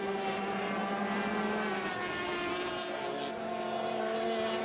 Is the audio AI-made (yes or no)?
no